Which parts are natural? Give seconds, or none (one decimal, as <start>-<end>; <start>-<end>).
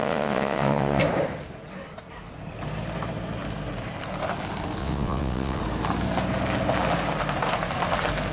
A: 1.0-4.8; 5.6-8.3